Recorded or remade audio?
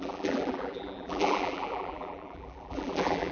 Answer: remade